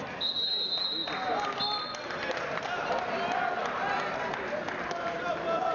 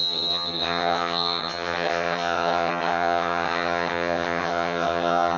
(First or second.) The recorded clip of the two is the first